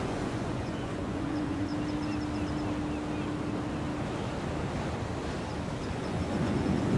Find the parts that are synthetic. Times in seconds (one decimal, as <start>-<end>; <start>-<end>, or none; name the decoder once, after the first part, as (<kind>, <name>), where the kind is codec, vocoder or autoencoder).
0.0-1.7 (vocoder, Vocos); 5.9-7.0